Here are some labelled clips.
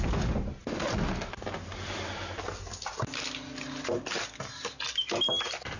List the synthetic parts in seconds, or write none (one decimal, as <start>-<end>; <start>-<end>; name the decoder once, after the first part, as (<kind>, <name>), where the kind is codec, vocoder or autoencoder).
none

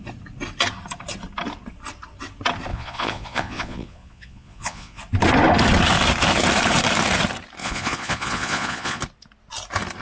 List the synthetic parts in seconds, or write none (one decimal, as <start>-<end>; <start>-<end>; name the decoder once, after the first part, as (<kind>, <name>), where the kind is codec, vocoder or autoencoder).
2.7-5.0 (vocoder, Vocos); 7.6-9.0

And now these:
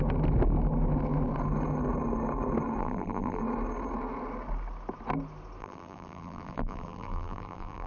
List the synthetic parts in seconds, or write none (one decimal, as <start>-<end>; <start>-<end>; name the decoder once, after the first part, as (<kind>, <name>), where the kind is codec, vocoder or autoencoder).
2.8-3.4 (vocoder, BigVGAN v2); 5.6-7.9

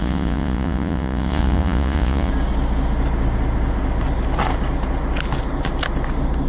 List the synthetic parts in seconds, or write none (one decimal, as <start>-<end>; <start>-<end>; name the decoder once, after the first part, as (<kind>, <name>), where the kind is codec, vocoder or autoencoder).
0.0-2.3 (vocoder, Vocos)